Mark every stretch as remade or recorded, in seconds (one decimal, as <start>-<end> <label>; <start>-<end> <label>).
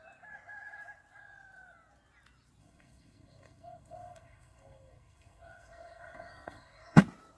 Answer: 0.0-2.6 recorded; 2.6-7.0 remade; 7.0-7.4 recorded